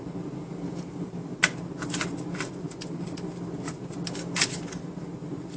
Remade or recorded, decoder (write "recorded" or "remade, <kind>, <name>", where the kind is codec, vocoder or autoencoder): recorded